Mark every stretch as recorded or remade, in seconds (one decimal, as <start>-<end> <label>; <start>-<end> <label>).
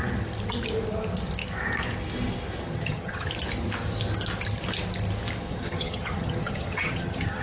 0.0-2.6 recorded; 2.6-3.3 remade; 3.3-5.5 recorded; 5.5-7.4 remade